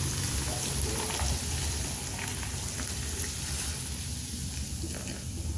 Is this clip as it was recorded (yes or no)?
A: yes